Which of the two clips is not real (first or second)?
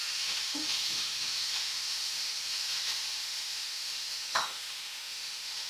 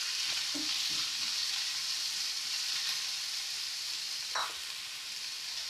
first